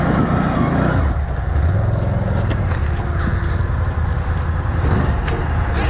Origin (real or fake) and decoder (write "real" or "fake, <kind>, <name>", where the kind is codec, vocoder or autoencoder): real